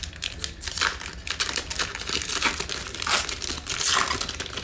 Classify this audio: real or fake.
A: real